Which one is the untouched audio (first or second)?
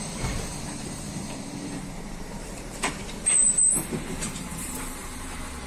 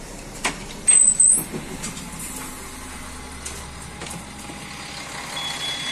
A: second